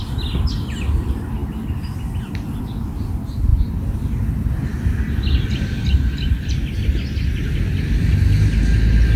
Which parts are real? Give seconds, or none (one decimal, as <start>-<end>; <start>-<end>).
0.0-9.2